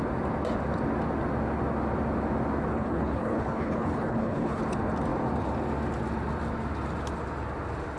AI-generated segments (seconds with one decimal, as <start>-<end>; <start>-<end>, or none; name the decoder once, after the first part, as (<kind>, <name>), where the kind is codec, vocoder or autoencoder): 2.7-4.6 (codec, HILCodec)